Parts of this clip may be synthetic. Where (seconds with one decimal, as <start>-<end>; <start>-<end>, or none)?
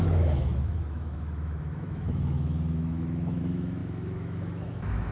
0.0-5.1